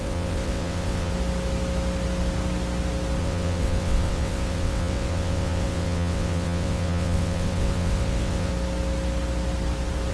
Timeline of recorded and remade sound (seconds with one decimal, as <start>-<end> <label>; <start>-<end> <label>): 0.0-1.1 remade; 1.1-3.2 recorded; 3.2-8.5 remade; 8.5-10.1 recorded